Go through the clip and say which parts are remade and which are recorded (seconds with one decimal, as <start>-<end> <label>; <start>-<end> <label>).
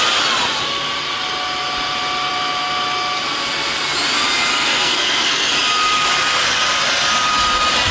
0.0-4.5 recorded; 4.5-5.5 remade; 5.5-7.9 recorded